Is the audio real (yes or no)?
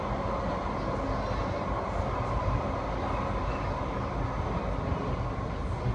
yes